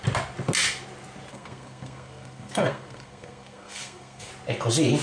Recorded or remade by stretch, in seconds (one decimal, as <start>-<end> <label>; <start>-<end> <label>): 0.0-1.3 recorded; 1.3-4.3 remade; 4.3-5.0 recorded